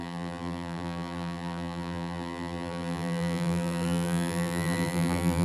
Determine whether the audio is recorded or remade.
remade